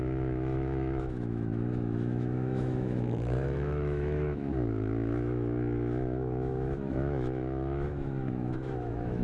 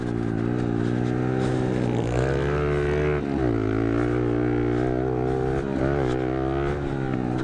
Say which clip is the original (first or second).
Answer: second